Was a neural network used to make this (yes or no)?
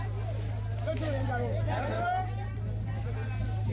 no